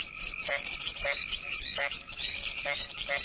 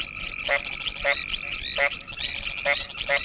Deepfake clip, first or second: first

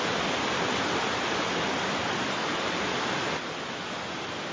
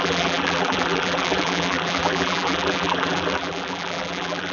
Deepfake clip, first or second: second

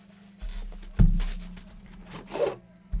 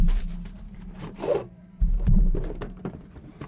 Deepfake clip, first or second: second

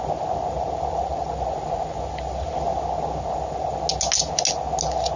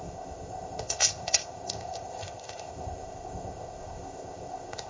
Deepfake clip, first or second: second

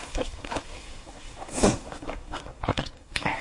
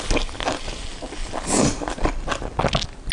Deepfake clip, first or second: first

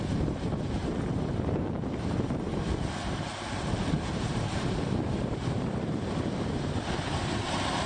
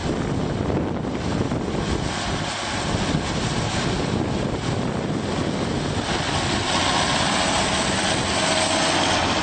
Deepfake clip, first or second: first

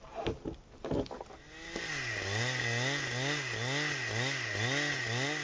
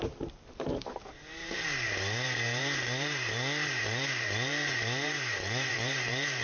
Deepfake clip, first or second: second